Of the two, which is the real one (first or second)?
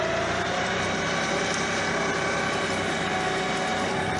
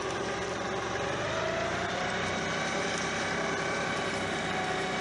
first